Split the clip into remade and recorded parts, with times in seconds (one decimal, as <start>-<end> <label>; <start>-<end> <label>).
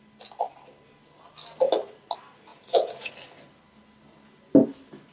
0.0-2.5 recorded; 2.5-3.1 remade; 3.1-5.1 recorded